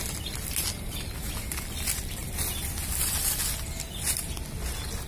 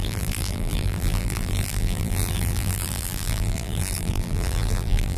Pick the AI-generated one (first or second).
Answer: second